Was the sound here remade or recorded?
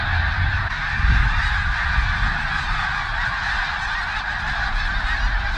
recorded